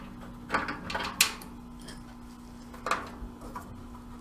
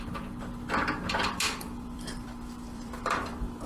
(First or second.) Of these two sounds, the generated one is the second